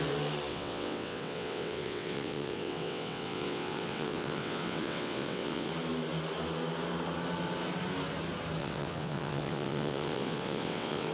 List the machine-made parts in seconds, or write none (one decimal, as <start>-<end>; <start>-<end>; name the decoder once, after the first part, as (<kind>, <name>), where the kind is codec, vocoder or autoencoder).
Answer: 0.5-5.7 (vocoder, WaveNeXt); 8.6-11.1